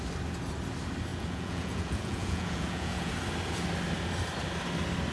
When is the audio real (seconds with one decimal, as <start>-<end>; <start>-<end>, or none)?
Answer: 0.0-1.1; 3.1-5.1